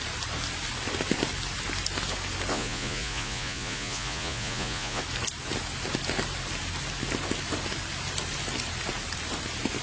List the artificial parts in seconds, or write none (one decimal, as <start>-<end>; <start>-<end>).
2.5-5.0